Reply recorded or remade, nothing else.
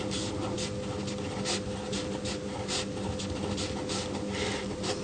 recorded